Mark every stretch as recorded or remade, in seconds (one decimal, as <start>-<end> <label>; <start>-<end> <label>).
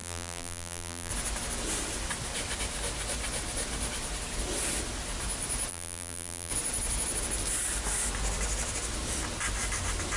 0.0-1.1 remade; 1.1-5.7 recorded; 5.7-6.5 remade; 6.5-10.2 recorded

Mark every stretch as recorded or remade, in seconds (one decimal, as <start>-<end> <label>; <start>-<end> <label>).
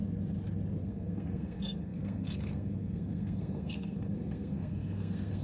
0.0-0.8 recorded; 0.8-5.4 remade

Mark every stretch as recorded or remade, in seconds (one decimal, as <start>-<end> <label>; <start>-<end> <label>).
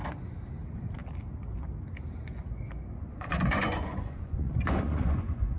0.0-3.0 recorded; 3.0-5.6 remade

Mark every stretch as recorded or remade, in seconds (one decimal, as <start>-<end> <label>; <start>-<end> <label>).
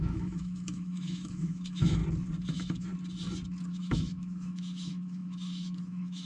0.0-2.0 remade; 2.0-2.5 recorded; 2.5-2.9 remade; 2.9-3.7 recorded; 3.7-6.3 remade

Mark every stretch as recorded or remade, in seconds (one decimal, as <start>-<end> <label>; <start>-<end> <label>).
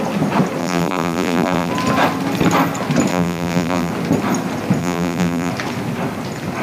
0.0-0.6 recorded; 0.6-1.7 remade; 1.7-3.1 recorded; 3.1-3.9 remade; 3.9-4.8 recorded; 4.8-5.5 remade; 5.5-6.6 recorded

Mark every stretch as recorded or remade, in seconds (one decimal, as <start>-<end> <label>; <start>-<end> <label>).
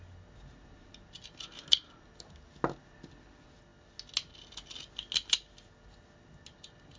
0.0-7.0 recorded